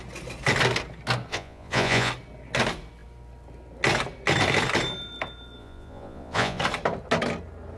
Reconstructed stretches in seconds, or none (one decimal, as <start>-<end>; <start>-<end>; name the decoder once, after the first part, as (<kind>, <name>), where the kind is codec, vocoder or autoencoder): 1.3-2.1 (vocoder, Vocos); 5.6-6.6